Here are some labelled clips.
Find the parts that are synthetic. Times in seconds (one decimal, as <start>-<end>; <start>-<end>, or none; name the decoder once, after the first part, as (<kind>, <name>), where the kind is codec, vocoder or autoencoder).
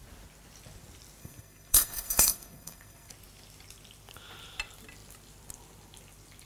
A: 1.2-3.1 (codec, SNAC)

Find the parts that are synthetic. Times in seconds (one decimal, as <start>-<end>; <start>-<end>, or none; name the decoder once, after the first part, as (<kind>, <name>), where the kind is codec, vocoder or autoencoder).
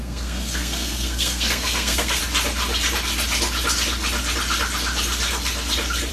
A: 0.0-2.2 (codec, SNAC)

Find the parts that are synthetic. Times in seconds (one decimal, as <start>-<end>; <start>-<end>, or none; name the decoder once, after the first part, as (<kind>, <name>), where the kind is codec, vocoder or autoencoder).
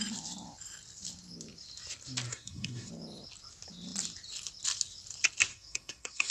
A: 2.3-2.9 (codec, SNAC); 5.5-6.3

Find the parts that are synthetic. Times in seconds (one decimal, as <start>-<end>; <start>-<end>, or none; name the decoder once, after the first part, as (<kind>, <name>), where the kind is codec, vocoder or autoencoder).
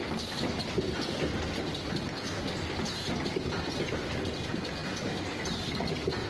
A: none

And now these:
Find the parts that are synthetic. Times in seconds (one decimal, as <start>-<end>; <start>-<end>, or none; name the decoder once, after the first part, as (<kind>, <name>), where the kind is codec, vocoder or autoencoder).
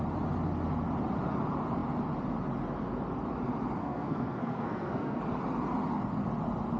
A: 3.8-5.2 (codec, SNAC)